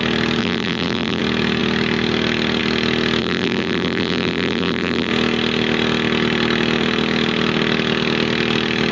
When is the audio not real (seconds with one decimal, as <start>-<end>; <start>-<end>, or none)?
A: 0.4-1.2; 3.2-5.1